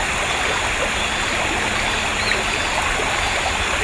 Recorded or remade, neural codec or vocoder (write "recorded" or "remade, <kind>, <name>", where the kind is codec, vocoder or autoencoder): recorded